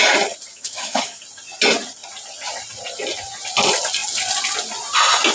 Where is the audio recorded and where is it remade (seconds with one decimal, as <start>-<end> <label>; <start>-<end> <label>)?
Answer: 0.0-0.5 recorded; 0.5-1.2 remade; 1.2-5.3 recorded